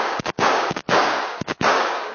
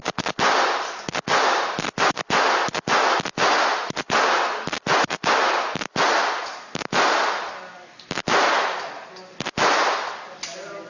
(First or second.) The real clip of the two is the second